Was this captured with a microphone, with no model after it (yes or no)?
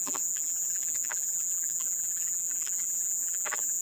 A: no